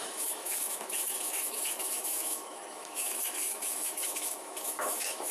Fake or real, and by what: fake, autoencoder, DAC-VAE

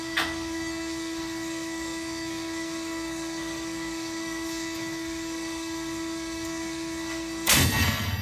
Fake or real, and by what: fake, codec, SNAC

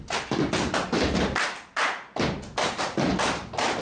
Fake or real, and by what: real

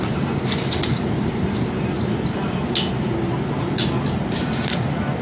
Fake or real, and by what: real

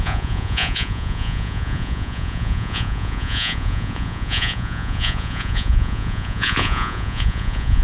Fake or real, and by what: fake, vocoder, Vocos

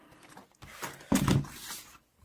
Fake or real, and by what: real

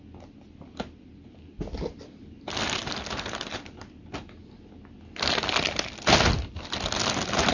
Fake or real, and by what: real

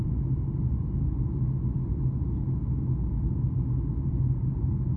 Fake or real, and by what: real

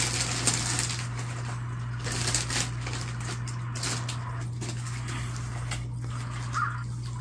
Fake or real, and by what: real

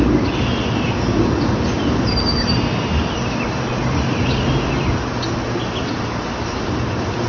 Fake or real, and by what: real